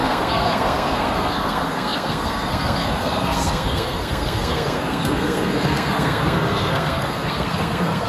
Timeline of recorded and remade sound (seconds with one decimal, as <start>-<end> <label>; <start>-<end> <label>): 0.0-8.1 remade